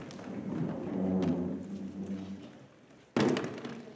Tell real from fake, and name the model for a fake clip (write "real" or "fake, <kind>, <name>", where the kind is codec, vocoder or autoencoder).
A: real